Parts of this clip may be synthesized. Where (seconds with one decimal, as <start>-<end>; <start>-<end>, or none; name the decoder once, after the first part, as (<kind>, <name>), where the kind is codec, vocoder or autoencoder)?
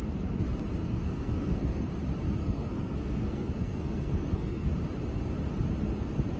0.8-1.9 (codec, SNAC); 2.4-4.7